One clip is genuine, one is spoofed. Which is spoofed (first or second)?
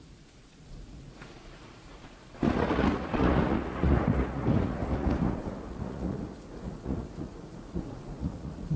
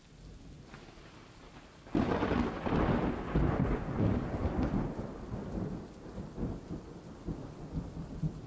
first